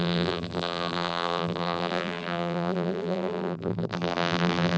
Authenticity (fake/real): fake